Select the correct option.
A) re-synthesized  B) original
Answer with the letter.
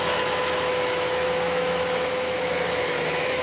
A